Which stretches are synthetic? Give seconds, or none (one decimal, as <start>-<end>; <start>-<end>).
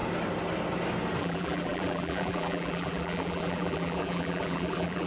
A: 1.2-5.1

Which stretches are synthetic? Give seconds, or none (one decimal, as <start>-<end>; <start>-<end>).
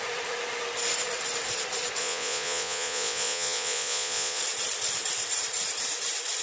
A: 2.0-4.4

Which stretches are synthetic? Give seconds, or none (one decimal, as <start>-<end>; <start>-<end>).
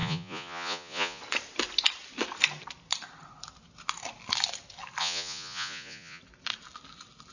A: 0.0-1.2; 5.0-6.2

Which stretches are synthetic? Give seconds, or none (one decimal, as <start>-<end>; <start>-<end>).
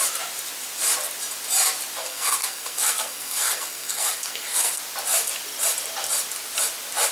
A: 2.0-4.8